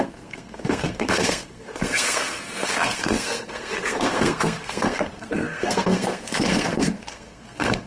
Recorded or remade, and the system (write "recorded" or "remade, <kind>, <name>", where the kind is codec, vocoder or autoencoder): remade, codec, SNAC